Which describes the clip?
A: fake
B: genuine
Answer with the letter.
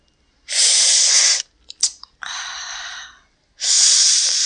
B